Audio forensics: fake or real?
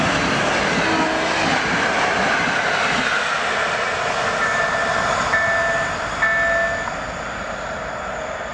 real